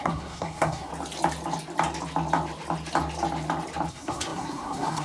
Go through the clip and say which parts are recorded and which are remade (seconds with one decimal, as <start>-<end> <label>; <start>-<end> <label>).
0.0-0.9 remade; 0.9-3.9 recorded; 3.9-5.0 remade